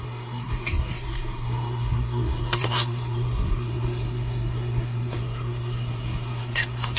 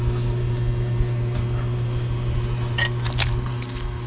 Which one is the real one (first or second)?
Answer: second